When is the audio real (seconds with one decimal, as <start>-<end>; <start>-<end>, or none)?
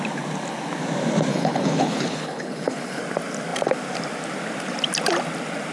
0.0-1.3; 3.0-5.7